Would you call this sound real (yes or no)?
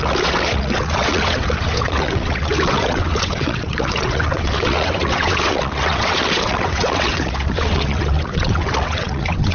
no